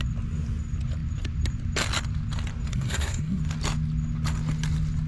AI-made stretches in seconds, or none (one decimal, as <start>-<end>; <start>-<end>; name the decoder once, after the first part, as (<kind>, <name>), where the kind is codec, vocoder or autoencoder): 2.7-3.4 (codec, SNAC)